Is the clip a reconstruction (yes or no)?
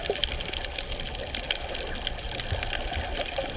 no